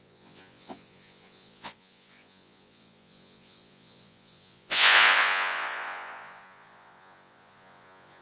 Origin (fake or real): fake